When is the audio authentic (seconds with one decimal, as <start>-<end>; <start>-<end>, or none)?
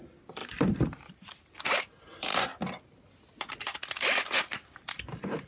0.0-0.4; 1.8-5.5